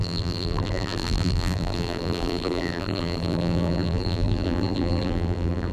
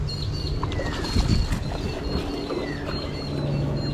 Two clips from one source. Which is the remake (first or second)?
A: first